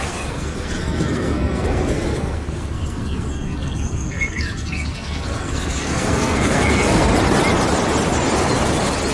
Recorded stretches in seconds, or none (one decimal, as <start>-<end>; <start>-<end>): 7.1-9.1